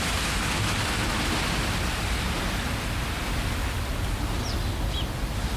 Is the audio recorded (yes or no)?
yes